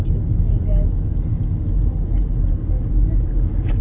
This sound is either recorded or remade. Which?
recorded